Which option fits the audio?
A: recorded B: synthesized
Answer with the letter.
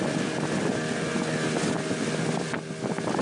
A